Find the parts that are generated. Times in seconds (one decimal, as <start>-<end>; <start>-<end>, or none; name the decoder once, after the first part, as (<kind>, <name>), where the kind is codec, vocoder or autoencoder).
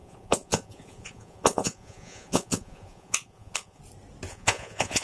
0.0-3.8 (vocoder, Vocos); 4.3-5.0